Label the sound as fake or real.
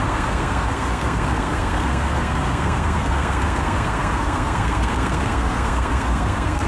fake